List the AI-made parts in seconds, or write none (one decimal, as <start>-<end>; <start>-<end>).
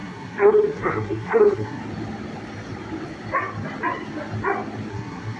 0.0-1.8; 4.9-5.4